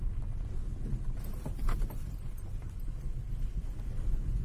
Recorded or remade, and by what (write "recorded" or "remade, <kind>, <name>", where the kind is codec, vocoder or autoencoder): recorded